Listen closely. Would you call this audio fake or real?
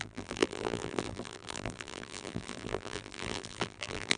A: fake